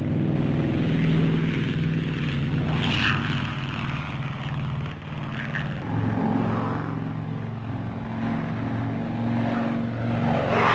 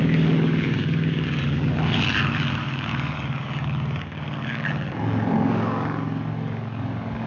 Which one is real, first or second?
first